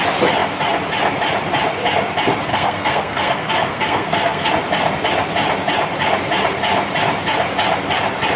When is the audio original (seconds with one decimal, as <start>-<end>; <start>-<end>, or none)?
0.0-2.5; 4.5-8.4